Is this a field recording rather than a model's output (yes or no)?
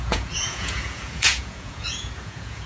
no